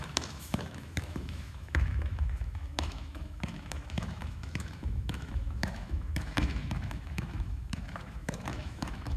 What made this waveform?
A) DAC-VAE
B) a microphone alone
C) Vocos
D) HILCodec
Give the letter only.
A